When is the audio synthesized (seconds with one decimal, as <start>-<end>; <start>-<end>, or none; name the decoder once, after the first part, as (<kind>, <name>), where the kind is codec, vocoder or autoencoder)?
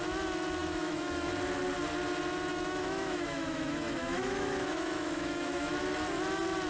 0.6-1.3 (autoencoder, DAC-VAE); 2.5-5.7